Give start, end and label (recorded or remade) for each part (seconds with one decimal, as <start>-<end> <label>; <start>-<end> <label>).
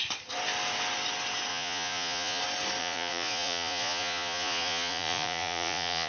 0.0-1.5 recorded; 1.5-2.4 remade; 2.4-2.8 recorded; 2.8-6.1 remade